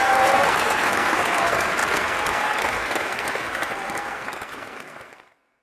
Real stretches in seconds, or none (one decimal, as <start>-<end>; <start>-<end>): none